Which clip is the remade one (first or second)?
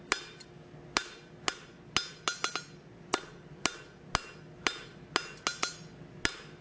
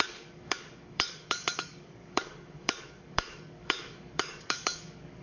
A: second